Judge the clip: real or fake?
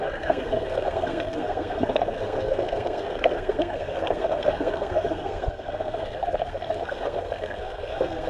fake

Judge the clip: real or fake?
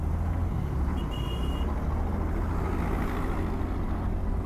real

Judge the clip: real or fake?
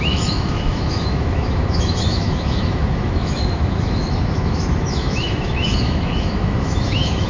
fake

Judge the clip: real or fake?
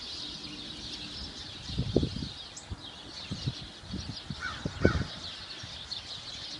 real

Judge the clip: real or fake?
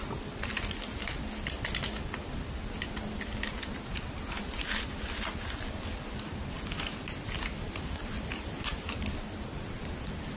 real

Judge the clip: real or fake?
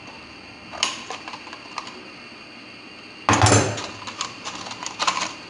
real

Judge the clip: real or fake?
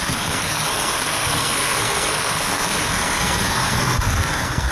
fake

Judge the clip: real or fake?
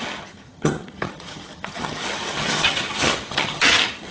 fake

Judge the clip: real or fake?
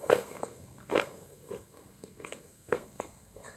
fake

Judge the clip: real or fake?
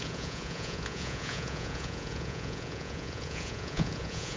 fake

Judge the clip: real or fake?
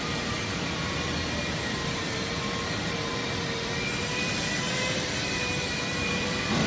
fake